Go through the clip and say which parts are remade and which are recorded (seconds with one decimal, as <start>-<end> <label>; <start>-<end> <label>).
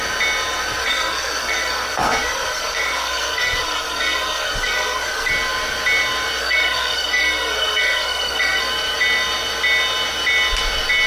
0.0-0.8 recorded; 0.8-5.3 remade; 5.3-6.4 recorded; 6.4-8.6 remade; 8.6-11.1 recorded